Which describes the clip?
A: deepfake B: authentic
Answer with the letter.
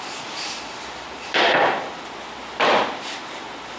A